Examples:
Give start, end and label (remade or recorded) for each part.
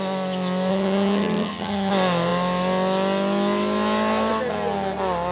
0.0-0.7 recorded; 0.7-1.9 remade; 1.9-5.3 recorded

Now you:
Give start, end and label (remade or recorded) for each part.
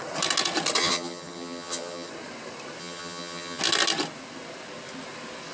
0.0-0.8 recorded; 0.8-2.1 remade; 2.1-2.8 recorded; 2.8-3.6 remade; 3.6-5.5 recorded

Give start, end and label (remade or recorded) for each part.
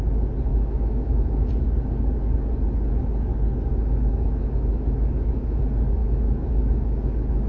0.0-0.5 recorded; 0.5-1.5 remade; 1.5-3.7 recorded; 3.7-5.6 remade; 5.6-6.0 recorded; 6.0-7.5 remade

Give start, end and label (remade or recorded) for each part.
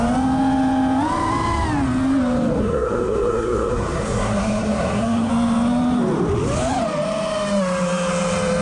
0.0-2.6 recorded; 2.6-5.3 remade; 5.3-8.6 recorded